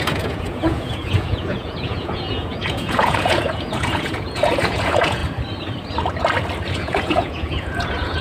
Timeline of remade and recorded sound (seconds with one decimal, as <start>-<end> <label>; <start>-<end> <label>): 0.0-5.2 remade; 5.2-6.7 recorded; 6.7-8.2 remade